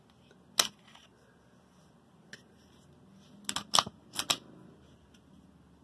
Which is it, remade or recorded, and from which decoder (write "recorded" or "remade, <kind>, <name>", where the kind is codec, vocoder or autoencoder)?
recorded